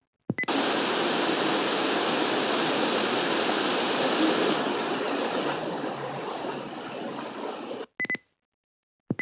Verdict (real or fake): real